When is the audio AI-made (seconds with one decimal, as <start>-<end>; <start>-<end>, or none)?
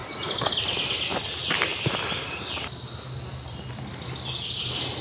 0.0-0.5; 1.7-5.0